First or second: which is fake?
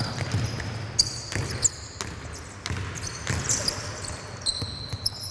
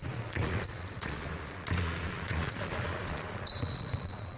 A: second